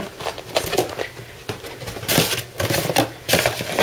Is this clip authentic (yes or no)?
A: yes